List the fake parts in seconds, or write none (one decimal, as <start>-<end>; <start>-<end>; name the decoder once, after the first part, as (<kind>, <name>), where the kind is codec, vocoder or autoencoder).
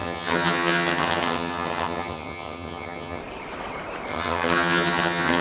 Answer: 0.0-3.2 (vocoder, HiFi-GAN); 4.1-5.4